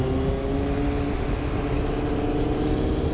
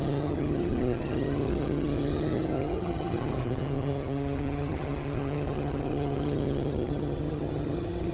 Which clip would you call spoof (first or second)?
second